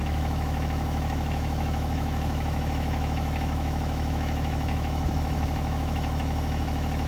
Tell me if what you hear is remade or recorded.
remade